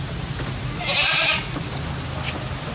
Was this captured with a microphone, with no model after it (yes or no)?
yes